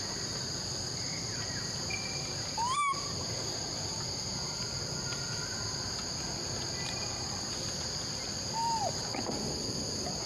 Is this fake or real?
real